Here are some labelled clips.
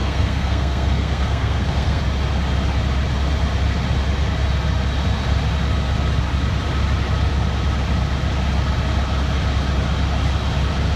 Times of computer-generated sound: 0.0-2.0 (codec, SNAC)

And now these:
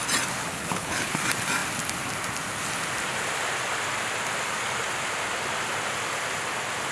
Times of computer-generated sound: 0.5-1.2 (codec, HILCodec)

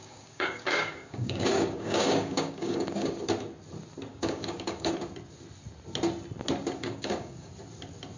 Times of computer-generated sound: 0.0-3.2 (codec, DAC); 4.1-4.9; 6.8-7.5

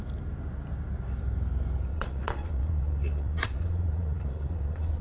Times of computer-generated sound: 1.9-5.0 (vocoder, Vocos)

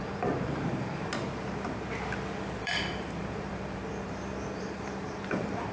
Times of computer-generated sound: 0.0-1.1 (vocoder, BigVGAN v2); 2.6-3.8; 4.6-5.7

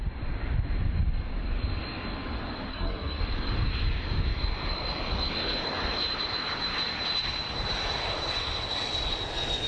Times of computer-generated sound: 2.7-3.2 (codec, SNAC)

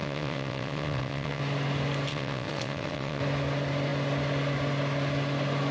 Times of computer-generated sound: 0.0-1.4 (vocoder, WaveNeXt); 2.1-3.2

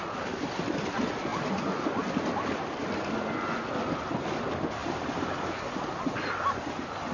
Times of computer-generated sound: none